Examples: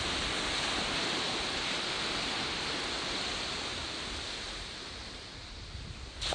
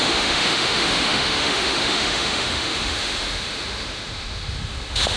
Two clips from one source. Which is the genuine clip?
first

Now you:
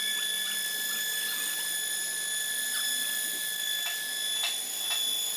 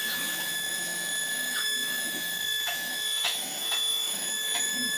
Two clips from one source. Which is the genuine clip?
first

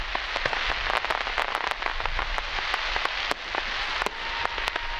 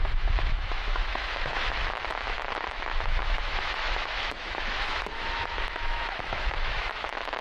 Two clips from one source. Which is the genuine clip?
first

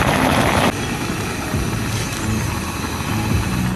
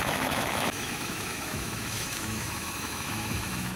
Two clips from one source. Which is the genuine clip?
first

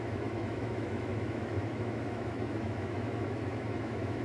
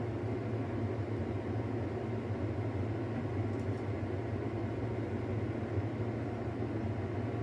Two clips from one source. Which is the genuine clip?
second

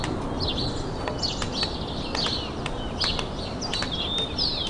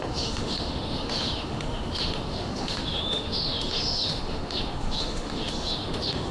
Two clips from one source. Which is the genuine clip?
first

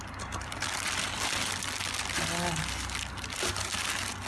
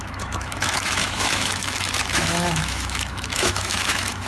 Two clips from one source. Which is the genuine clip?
first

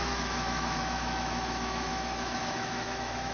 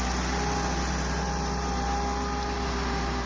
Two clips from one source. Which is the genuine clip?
second